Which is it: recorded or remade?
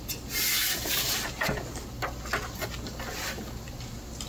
recorded